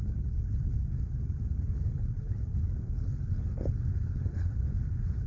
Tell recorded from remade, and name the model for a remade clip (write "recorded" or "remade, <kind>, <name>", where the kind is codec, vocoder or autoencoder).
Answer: remade, codec, HILCodec